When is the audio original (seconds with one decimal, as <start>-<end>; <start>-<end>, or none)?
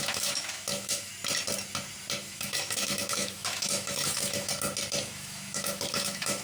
1.1-2.2; 4.5-5.0